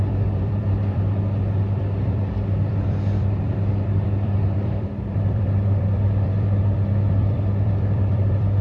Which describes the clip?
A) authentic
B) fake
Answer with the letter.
B